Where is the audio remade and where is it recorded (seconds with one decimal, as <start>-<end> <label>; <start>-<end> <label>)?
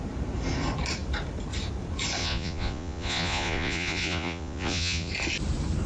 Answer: 0.0-2.2 recorded; 2.2-5.1 remade; 5.1-5.9 recorded